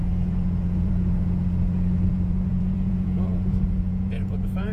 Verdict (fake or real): fake